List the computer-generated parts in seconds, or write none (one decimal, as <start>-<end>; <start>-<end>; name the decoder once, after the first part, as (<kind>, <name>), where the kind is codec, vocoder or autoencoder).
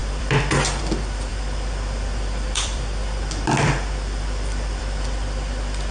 0.0-0.8 (vocoder, BigVGAN v2); 1.3-4.8